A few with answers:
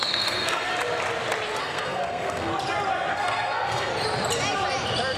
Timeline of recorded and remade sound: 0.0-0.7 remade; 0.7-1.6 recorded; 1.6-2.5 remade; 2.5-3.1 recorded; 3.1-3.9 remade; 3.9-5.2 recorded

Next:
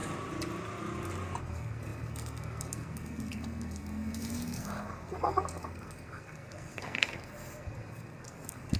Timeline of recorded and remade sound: 0.0-1.4 recorded; 1.4-8.8 remade

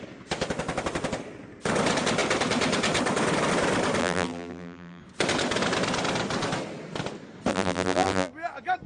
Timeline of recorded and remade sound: 0.0-4.0 recorded; 4.0-5.0 remade; 5.0-7.5 recorded; 7.5-8.3 remade; 8.3-8.9 recorded